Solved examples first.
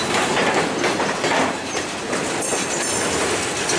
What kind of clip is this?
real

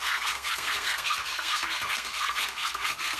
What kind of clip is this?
fake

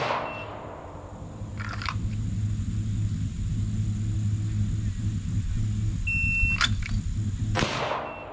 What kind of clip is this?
real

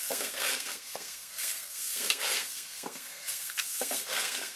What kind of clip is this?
fake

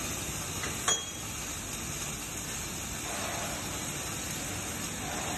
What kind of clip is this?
real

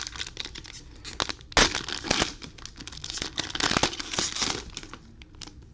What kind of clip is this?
real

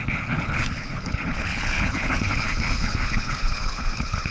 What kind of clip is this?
fake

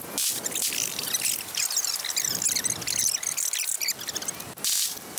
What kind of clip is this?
real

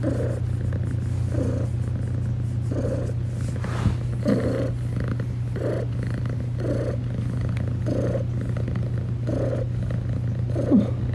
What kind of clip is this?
real